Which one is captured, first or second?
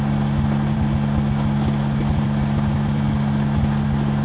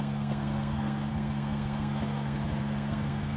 first